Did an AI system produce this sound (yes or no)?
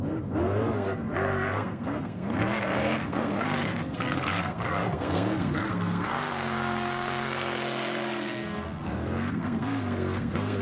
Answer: yes